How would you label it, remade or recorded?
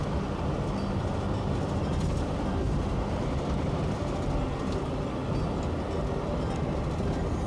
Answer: recorded